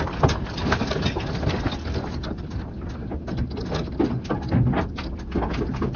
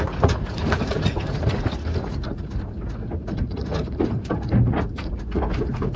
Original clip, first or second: first